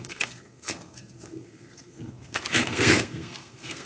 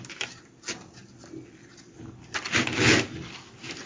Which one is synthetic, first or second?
first